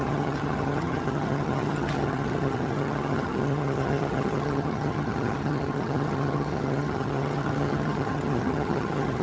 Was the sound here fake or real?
fake